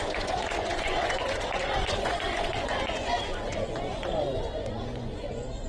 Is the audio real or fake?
fake